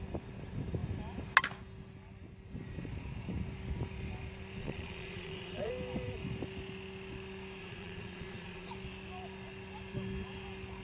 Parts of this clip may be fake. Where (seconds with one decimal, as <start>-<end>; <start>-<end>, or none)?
4.6-5.7; 7.6-8.7

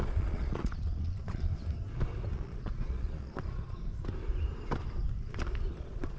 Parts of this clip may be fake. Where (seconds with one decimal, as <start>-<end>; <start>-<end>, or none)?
0.0-1.5; 2.3-3.9; 5.8-6.2

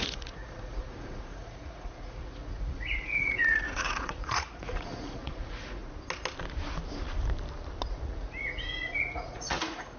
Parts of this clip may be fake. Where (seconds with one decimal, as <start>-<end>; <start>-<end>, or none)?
0.0-5.8; 7.9-10.0

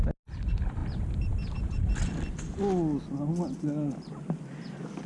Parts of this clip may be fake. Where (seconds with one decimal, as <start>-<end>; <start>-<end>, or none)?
none